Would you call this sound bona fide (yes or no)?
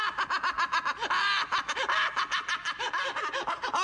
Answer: yes